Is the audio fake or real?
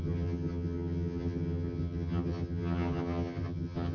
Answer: fake